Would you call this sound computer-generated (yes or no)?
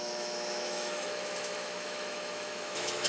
yes